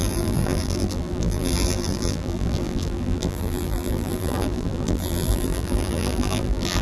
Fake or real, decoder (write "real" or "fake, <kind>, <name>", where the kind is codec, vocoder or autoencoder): fake, vocoder, BigVGAN v2